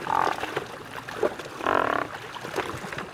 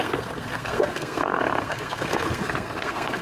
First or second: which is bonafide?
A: first